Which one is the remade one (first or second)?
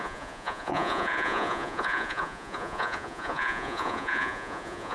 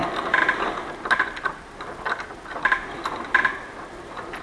first